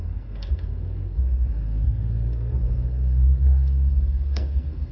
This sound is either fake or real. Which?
fake